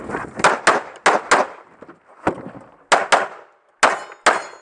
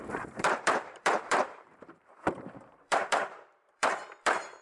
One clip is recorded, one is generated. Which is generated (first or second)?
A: second